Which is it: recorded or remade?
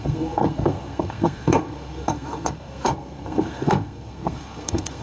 remade